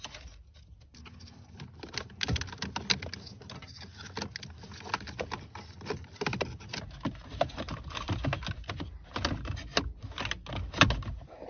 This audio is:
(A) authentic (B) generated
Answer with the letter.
A